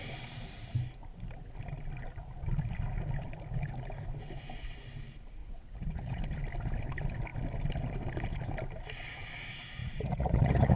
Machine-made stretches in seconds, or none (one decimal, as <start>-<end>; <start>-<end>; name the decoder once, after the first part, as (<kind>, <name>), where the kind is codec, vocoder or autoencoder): 5.4-6.2 (vocoder, Vocos); 9.8-10.8